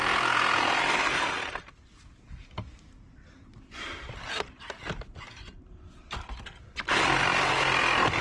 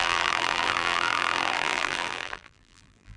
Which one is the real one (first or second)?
first